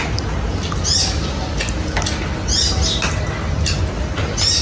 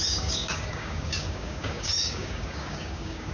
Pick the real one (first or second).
first